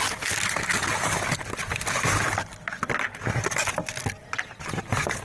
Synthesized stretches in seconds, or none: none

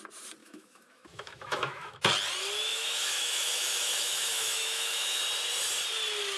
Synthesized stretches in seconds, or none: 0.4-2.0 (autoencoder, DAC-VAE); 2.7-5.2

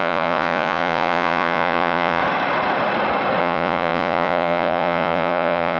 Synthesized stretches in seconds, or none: 0.0-2.2 (vocoder, Vocos); 3.4-5.8

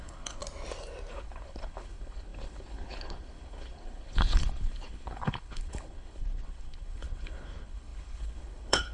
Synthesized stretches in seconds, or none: 0.0-0.4 (codec, HILCodec); 1.1-8.9

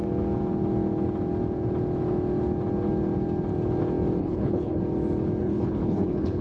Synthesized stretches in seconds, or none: 4.2-4.8 (codec, HILCodec); 5.4-6.4

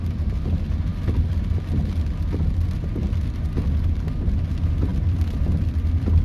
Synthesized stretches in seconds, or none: none

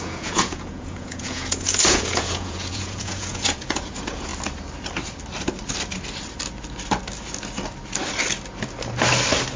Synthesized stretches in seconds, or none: 0.0-4.3 (vocoder, Vocos)